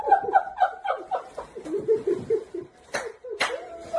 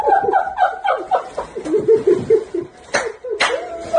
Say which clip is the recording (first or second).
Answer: second